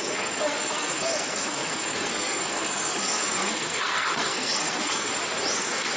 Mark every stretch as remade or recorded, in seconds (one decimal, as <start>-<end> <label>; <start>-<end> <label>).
0.0-5.1 remade; 5.1-5.6 recorded; 5.6-6.0 remade